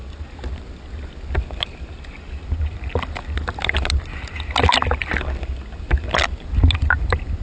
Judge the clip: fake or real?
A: real